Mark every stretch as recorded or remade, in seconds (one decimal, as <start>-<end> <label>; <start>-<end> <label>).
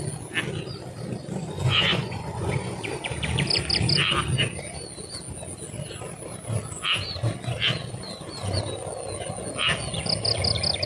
0.0-1.2 recorded; 1.2-2.8 remade; 2.8-10.9 recorded